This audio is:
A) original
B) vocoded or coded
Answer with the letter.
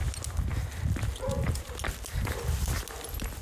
A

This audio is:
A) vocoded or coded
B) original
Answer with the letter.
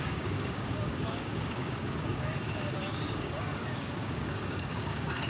A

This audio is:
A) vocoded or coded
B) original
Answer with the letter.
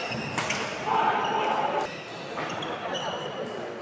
B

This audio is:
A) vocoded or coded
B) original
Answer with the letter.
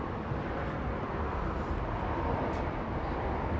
A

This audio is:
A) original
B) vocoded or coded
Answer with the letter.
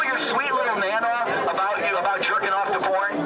A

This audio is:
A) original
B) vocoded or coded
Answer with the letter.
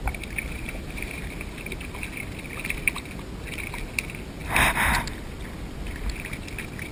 A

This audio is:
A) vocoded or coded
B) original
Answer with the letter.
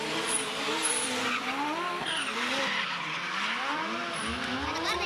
B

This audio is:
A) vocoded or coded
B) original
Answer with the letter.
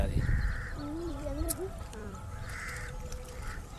A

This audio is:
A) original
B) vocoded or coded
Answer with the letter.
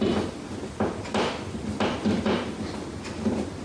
A